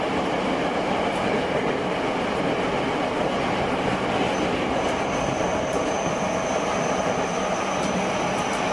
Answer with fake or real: real